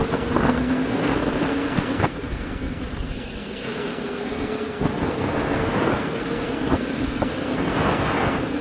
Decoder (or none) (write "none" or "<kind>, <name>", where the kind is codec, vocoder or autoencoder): codec, SNAC